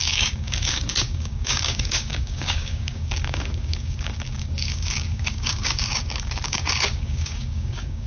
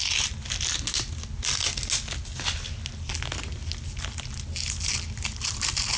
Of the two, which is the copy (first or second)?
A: first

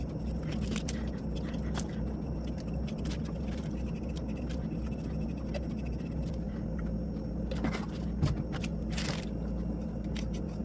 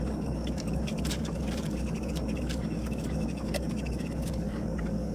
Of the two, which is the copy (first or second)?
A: second